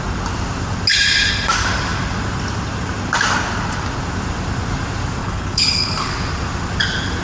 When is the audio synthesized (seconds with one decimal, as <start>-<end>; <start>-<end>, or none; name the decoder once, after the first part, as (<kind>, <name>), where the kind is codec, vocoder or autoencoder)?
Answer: 5.2-6.1 (codec, HILCodec)